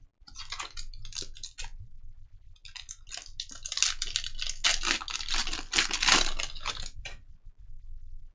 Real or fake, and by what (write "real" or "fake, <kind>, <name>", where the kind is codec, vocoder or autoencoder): real